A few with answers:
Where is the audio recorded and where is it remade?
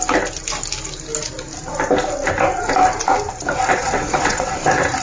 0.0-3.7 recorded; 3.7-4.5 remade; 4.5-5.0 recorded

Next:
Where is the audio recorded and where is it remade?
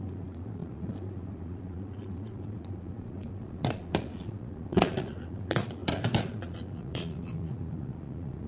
0.0-8.5 remade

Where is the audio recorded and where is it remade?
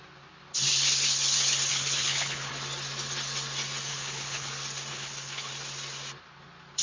0.0-1.7 recorded; 1.7-2.5 remade; 2.5-3.9 recorded; 3.9-4.5 remade; 4.5-4.9 recorded; 4.9-5.5 remade; 5.5-6.8 recorded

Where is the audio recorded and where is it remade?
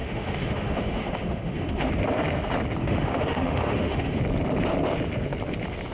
0.0-1.9 remade; 1.9-2.8 recorded; 2.8-4.2 remade; 4.2-5.9 recorded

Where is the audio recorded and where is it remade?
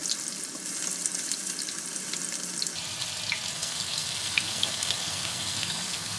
0.0-3.5 recorded; 3.5-6.2 remade